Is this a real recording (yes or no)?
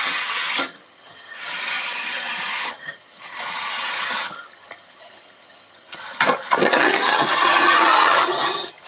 no